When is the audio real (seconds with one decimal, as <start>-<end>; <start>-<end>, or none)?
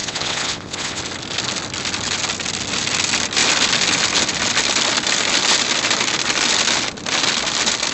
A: 1.0-7.9